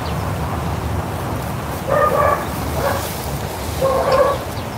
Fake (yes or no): no